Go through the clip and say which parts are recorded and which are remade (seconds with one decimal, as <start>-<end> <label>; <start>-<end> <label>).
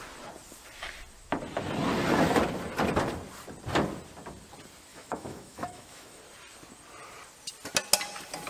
0.0-4.9 recorded; 4.9-6.2 remade; 6.2-8.5 recorded